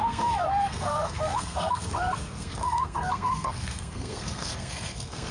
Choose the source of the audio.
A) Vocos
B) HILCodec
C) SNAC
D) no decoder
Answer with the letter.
C